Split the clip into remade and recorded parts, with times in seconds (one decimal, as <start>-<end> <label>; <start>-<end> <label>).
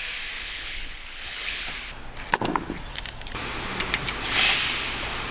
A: 0.0-0.4 recorded; 0.4-1.7 remade; 1.7-5.3 recorded